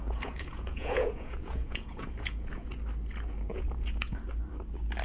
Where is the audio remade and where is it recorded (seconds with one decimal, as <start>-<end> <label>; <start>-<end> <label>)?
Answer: 0.0-2.7 remade; 2.7-3.5 recorded; 3.5-4.3 remade; 4.3-5.0 recorded